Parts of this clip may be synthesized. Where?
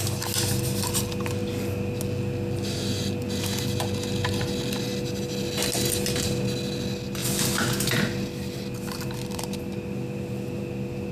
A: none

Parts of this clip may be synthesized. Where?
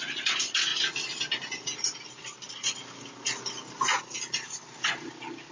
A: none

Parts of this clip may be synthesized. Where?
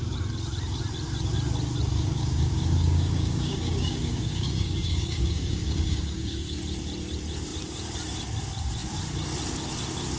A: 1.9-6.6 (codec, DAC)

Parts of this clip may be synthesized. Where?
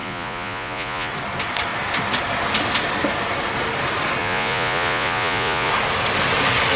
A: 0.0-1.1 (vocoder, Vocos); 4.2-5.7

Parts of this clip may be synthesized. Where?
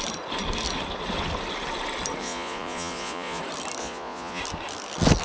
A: 2.2-3.4 (vocoder, Vocos); 3.8-4.4